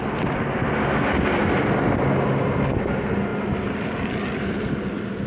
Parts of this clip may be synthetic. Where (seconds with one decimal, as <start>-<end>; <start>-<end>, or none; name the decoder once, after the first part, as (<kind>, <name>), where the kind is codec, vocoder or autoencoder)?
none